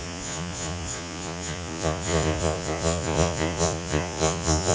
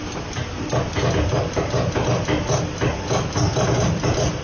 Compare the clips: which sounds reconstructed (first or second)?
first